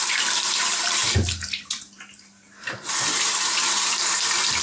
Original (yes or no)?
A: no